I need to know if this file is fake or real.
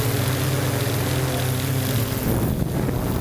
real